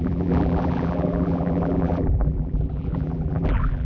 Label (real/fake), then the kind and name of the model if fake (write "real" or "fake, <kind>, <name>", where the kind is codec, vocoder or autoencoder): fake, vocoder, BigVGAN v2